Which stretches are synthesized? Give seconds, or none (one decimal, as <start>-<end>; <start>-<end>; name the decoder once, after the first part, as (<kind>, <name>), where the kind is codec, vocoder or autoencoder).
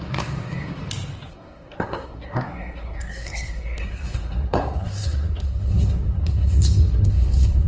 0.0-0.8 (codec, SNAC); 1.3-7.7